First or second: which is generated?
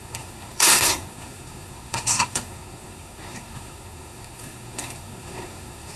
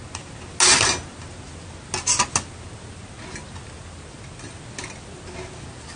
first